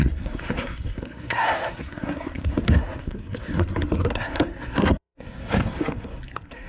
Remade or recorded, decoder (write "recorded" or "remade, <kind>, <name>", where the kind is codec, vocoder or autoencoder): remade, codec, SNAC